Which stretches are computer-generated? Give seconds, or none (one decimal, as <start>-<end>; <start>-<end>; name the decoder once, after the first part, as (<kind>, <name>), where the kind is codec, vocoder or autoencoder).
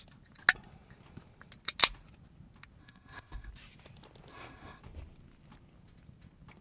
2.8-3.5 (codec, SNAC); 4.3-4.8